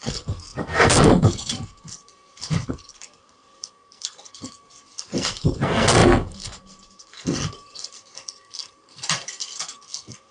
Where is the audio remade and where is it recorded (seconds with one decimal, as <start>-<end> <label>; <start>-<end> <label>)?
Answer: 0.0-10.3 remade